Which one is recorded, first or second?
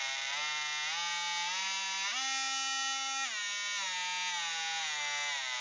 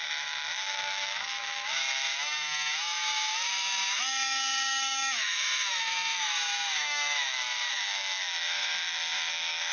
first